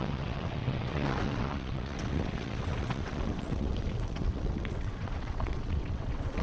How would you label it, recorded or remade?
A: remade